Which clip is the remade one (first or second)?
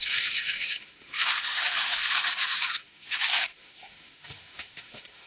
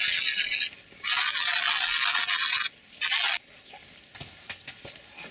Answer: first